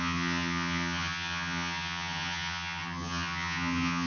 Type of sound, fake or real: fake